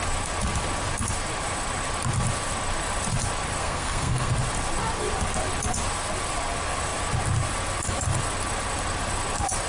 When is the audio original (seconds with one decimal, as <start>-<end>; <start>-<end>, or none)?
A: 0.0-3.6; 4.3-9.7